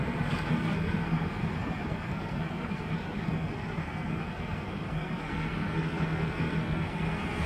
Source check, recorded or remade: remade